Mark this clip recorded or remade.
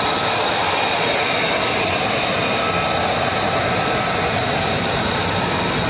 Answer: recorded